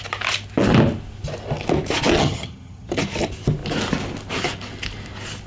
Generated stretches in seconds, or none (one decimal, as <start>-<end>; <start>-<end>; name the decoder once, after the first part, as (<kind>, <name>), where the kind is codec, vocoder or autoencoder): 2.1-2.9 (vocoder, HiFi-GAN)